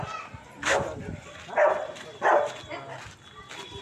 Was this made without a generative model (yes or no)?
yes